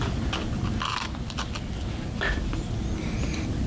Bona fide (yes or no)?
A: yes